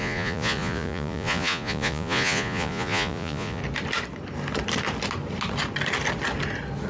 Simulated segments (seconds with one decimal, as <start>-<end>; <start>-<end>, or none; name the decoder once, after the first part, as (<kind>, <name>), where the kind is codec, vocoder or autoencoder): 0.0-3.6 (vocoder, Vocos)